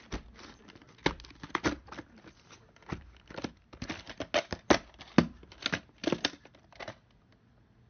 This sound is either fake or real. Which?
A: real